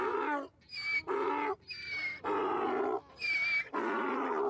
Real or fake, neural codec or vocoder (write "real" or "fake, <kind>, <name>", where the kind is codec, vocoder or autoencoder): real